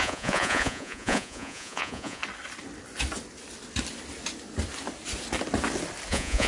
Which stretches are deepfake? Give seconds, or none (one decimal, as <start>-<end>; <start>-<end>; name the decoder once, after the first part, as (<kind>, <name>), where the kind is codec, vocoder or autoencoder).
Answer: 0.0-2.2 (vocoder, Vocos); 6.1-6.5